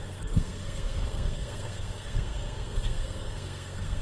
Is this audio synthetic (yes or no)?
yes